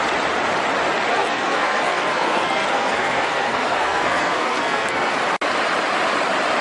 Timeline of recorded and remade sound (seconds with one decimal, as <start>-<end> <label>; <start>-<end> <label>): 0.0-1.1 recorded; 1.1-5.1 remade; 5.1-6.6 recorded